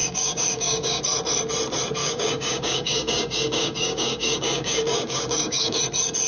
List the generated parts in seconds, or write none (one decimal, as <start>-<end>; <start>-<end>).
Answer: 0.0-1.0; 2.0-5.8